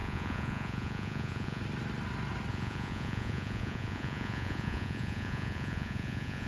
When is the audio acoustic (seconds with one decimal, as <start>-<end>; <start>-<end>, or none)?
1.6-2.5